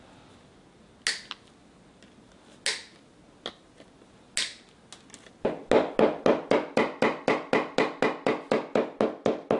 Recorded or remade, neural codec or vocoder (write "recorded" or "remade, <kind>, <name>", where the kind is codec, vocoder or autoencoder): recorded